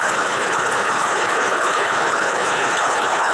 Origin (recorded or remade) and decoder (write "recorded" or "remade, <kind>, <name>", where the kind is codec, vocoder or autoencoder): remade, codec, HILCodec